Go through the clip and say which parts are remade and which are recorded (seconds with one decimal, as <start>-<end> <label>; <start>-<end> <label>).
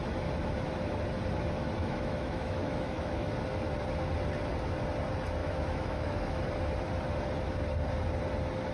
0.0-1.8 recorded; 1.8-3.3 remade; 3.3-5.4 recorded; 5.4-6.4 remade; 6.4-8.7 recorded